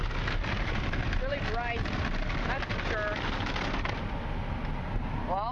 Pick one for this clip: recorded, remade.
recorded